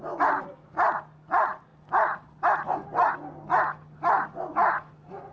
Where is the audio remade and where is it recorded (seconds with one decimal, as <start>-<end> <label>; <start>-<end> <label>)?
0.0-5.3 recorded